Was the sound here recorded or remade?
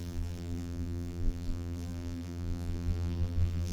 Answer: remade